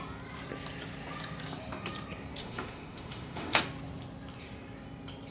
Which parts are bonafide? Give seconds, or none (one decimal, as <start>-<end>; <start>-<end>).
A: 0.0-2.4; 3.6-5.3